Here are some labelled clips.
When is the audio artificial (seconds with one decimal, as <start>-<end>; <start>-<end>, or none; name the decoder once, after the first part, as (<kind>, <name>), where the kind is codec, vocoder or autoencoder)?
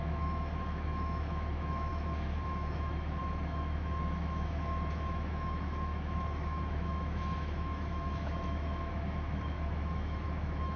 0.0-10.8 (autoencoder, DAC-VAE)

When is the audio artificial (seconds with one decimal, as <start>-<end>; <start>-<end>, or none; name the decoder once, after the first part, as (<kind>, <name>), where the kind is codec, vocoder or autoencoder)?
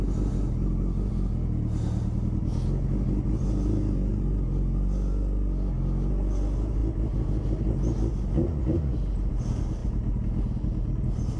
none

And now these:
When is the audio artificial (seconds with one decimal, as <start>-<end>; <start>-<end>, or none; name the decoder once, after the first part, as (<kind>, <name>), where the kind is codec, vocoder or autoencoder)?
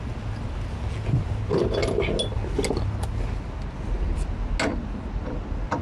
none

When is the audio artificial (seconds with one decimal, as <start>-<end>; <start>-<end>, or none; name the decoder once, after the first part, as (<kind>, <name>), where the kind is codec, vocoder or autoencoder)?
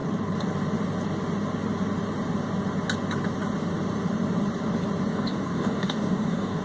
5.1-6.6 (codec, DAC)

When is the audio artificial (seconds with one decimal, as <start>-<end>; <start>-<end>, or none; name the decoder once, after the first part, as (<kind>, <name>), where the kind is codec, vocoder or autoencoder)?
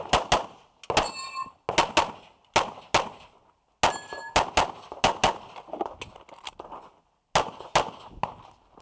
none